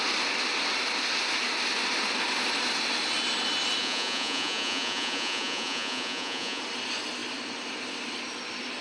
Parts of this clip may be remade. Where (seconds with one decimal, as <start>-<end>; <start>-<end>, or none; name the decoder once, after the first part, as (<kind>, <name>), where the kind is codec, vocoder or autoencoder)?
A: 3.8-6.6 (vocoder, Vocos)